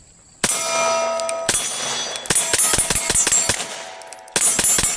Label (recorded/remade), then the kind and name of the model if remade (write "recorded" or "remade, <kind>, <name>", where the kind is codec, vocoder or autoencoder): recorded